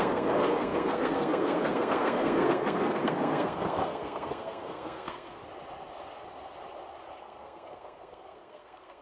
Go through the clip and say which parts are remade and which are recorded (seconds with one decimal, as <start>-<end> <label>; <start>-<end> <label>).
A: 0.0-5.4 remade; 5.4-7.2 recorded; 7.2-9.0 remade